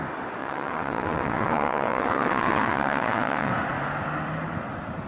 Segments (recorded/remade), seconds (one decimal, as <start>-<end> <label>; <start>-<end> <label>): 0.0-0.4 recorded; 0.4-3.5 remade; 3.5-5.1 recorded